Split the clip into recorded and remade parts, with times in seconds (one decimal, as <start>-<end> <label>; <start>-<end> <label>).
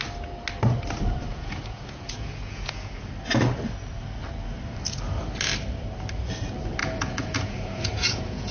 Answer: 0.0-1.3 recorded; 1.3-3.1 remade; 3.1-6.8 recorded; 6.8-8.5 remade